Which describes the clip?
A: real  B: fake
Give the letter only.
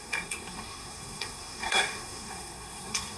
B